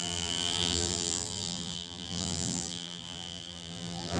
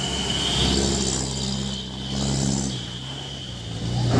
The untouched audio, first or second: second